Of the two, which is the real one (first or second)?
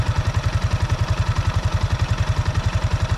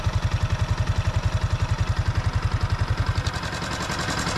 second